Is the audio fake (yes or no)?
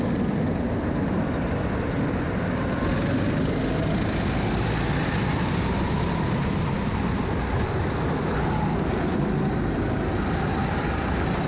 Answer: no